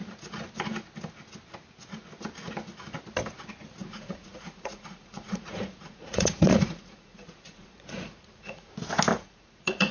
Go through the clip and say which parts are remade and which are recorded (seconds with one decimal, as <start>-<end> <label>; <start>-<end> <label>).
0.0-3.8 recorded; 3.8-8.7 remade; 8.7-9.1 recorded; 9.1-9.9 remade